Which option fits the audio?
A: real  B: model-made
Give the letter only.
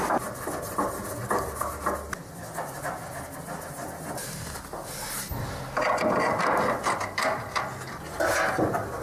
A